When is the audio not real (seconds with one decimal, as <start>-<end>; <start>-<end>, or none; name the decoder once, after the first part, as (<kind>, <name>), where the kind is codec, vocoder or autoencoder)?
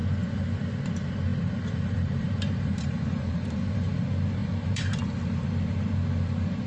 1.3-4.0 (vocoder, BigVGAN v2); 4.4-5.0